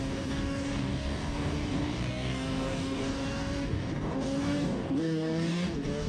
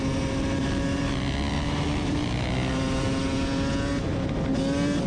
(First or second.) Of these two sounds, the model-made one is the first